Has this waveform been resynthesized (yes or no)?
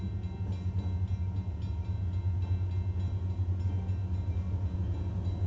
no